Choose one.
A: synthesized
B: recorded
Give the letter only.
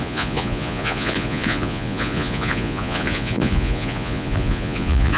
A